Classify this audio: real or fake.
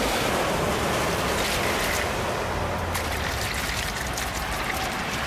real